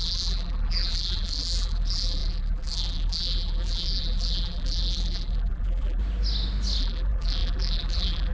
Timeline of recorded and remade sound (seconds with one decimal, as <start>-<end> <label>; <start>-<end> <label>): 0.0-6.0 remade; 6.0-6.8 recorded; 6.8-8.3 remade